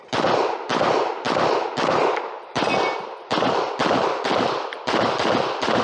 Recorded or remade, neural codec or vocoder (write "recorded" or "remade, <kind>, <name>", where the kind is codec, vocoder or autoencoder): recorded